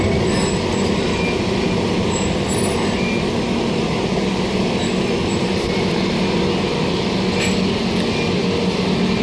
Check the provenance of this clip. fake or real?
real